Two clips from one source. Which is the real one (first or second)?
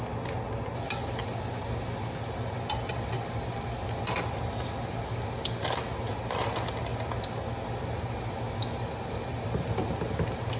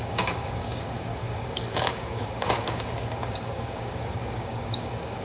first